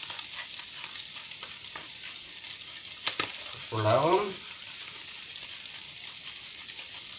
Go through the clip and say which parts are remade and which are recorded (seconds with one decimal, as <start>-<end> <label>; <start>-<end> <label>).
0.0-3.3 recorded; 3.3-5.3 remade; 5.3-7.2 recorded